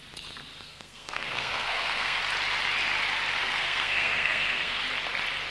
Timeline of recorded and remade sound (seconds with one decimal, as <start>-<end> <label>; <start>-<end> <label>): 0.0-0.5 recorded; 0.5-2.2 remade; 2.2-3.4 recorded; 3.4-4.8 remade; 4.8-5.5 recorded